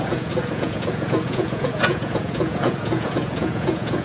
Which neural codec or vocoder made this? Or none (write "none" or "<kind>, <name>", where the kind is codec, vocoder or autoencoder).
vocoder, Vocos